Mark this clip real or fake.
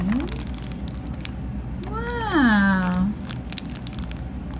real